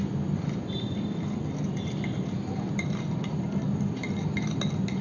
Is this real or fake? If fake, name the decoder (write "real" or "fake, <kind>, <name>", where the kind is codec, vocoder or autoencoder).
real